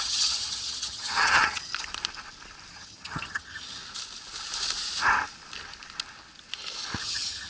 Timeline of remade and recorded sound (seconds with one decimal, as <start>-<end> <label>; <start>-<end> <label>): 0.0-1.7 remade; 1.7-2.7 recorded; 2.7-3.8 remade; 3.8-7.0 recorded; 7.0-7.5 remade